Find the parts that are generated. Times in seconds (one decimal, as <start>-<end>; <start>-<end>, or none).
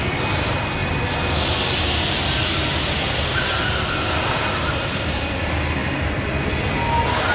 none